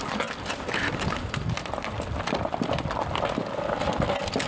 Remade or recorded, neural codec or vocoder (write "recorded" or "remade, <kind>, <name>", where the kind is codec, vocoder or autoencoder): recorded